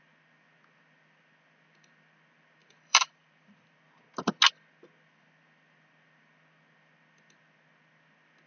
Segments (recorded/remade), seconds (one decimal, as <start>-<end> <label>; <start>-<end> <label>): 0.0-2.6 recorded; 2.6-3.7 remade; 3.7-8.5 recorded